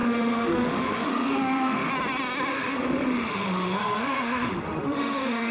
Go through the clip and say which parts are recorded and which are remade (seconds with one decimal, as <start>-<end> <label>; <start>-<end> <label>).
0.0-1.9 remade; 1.9-2.5 recorded; 2.5-5.5 remade